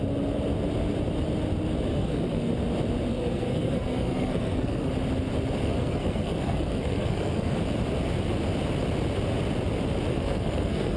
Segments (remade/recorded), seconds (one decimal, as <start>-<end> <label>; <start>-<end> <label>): 0.0-1.9 recorded; 1.9-2.5 remade; 2.5-3.1 recorded; 3.1-4.9 remade; 4.9-5.6 recorded; 5.6-7.6 remade; 7.6-10.1 recorded; 10.1-11.0 remade